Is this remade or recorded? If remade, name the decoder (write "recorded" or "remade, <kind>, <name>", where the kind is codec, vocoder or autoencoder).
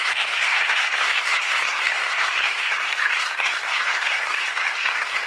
remade, codec, SNAC